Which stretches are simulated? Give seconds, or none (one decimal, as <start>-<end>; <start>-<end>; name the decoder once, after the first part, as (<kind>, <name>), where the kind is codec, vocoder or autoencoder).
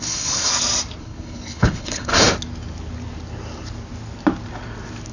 0.0-0.5 (codec, HILCodec); 1.0-2.1